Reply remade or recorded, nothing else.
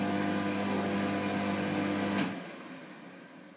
recorded